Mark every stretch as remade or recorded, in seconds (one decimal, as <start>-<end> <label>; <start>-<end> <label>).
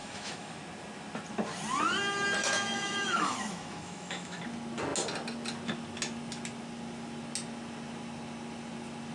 0.0-0.6 remade; 0.6-2.4 recorded; 2.4-4.4 remade; 4.4-9.1 recorded